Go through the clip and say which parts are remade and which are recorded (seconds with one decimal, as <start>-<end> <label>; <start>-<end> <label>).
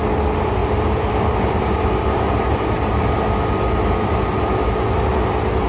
0.0-0.6 recorded; 0.6-4.0 remade; 4.0-5.7 recorded